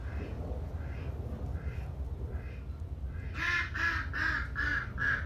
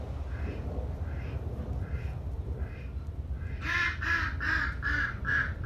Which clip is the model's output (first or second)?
second